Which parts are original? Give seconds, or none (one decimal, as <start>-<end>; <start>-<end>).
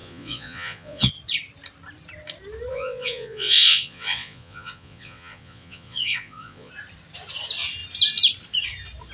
1.1-2.7; 6.7-9.1